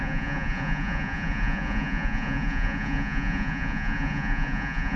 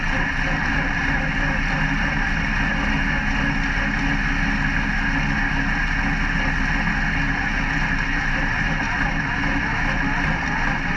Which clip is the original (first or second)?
second